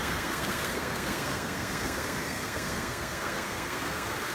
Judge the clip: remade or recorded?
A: remade